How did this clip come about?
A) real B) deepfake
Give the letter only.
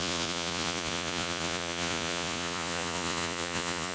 B